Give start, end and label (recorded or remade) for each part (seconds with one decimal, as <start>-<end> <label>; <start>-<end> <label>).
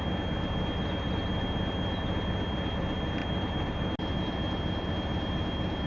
0.0-5.9 recorded